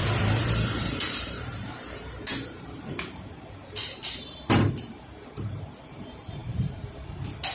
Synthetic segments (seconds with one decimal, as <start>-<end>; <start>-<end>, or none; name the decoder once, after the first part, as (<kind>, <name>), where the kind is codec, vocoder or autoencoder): 0.0-7.5 (vocoder, BigVGAN v2)